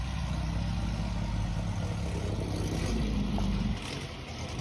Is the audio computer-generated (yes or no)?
no